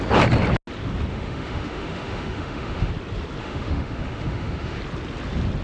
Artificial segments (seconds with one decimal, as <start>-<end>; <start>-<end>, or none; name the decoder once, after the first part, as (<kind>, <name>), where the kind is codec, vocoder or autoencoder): 1.1-2.9 (autoencoder, DAC-VAE); 3.4-4.8